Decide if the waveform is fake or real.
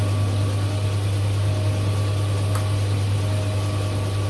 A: real